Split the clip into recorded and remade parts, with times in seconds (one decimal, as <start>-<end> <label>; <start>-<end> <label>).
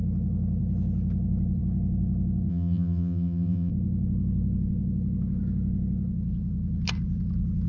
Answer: 0.0-2.5 recorded; 2.5-3.7 remade; 3.7-7.7 recorded